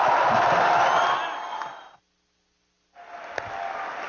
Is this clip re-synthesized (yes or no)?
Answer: no